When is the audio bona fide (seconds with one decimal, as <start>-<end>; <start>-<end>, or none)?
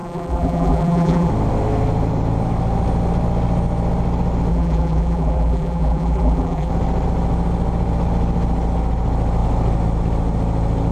1.3-4.5; 6.7-10.9